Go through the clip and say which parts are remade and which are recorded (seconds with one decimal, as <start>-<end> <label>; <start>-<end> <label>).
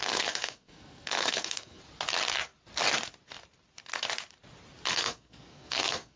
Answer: 0.0-1.8 remade; 1.8-4.9 recorded; 4.9-6.2 remade